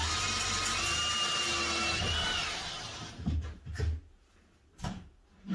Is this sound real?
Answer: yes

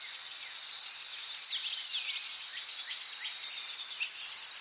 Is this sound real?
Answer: yes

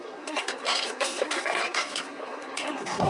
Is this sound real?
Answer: no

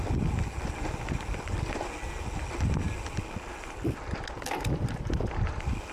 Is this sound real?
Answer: yes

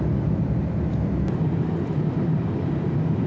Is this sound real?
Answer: yes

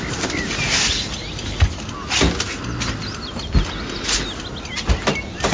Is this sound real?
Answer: yes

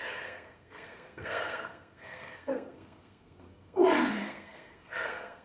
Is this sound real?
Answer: no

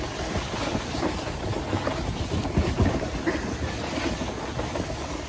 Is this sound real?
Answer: yes